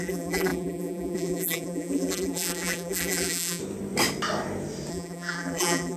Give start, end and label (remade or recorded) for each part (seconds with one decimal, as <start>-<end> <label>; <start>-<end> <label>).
0.0-3.6 remade; 3.6-4.9 recorded; 4.9-6.0 remade